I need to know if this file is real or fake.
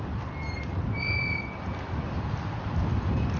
real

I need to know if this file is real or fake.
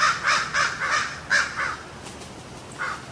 real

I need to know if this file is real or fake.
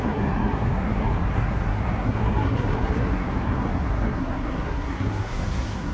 fake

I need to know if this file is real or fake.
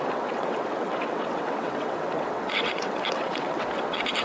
fake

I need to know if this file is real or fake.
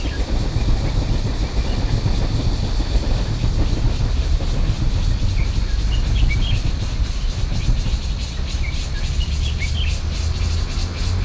real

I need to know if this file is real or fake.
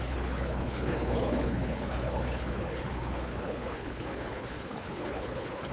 fake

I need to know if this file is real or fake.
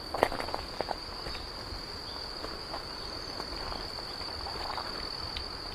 real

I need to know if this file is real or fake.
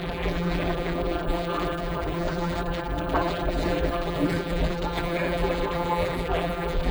fake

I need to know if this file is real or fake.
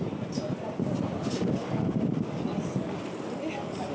fake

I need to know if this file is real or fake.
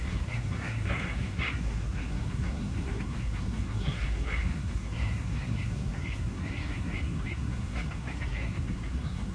fake